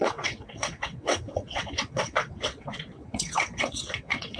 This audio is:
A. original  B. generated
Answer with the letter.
B